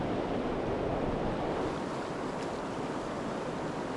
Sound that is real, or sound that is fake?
real